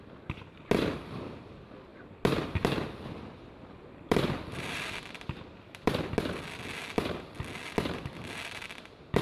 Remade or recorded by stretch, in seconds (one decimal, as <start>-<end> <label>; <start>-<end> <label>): 0.0-9.2 recorded